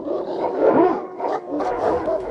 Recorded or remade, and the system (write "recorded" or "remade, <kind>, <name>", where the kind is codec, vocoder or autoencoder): remade, codec, DAC